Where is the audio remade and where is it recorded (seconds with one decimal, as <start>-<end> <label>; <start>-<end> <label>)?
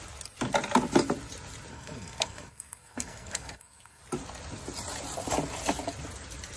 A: 0.0-1.7 recorded; 1.7-4.0 remade; 4.0-6.6 recorded